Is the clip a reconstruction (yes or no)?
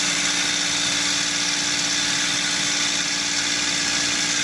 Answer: no